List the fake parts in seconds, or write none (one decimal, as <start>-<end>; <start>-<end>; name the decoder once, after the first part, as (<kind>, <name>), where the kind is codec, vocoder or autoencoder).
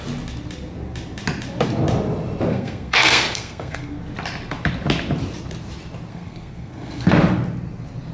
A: 2.5-4.0 (codec, SNAC); 6.1-7.1